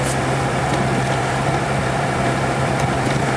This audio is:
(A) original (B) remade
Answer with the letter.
B